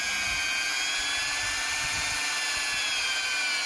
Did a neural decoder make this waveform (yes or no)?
no